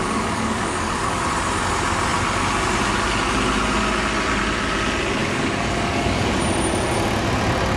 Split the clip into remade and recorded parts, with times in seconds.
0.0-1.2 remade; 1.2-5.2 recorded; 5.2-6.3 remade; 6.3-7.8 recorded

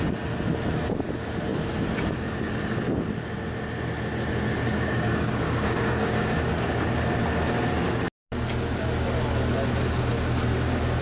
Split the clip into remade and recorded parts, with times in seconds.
0.0-4.7 recorded; 4.7-6.9 remade; 6.9-11.0 recorded